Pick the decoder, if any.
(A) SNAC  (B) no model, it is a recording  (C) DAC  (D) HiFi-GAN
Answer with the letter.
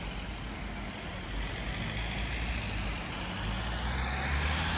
B